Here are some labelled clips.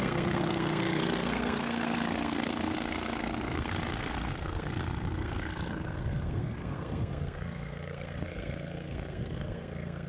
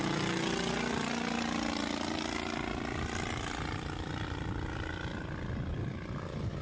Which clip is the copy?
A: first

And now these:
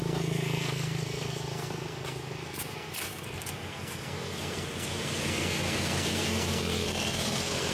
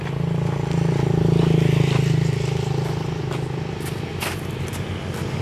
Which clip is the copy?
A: first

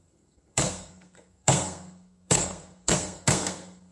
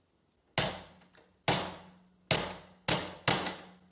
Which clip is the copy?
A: first